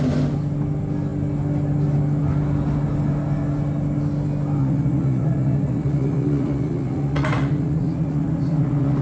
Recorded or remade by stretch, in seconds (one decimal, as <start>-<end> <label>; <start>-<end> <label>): 0.0-4.6 recorded; 4.6-9.0 remade